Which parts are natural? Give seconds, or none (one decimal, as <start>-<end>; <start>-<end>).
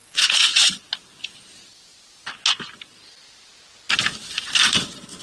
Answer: 0.7-5.2